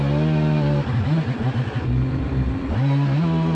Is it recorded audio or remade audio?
recorded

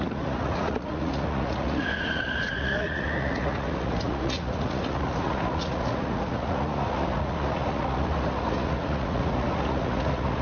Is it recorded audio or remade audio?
remade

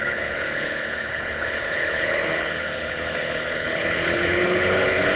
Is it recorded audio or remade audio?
remade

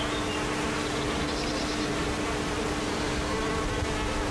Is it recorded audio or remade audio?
recorded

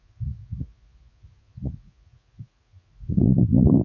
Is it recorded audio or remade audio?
remade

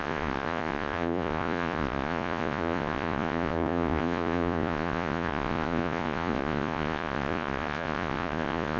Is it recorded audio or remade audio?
remade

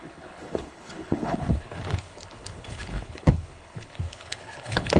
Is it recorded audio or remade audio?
remade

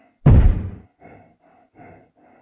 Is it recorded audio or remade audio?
recorded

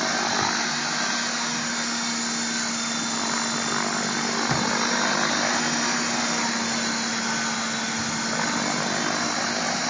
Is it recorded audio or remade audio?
recorded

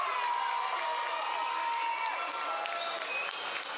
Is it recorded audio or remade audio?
recorded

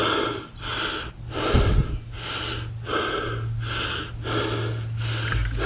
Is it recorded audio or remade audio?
recorded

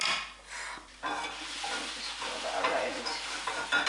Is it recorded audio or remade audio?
recorded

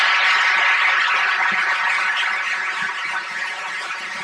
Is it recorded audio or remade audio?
recorded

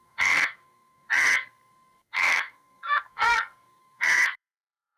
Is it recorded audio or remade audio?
remade